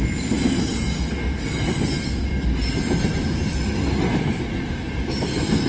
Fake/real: real